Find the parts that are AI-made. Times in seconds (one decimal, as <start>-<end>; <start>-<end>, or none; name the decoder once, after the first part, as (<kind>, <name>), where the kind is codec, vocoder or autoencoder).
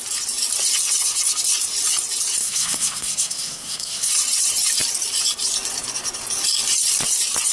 2.4-4.1 (codec, SNAC)